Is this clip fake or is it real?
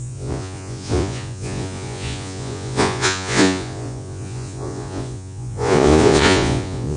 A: fake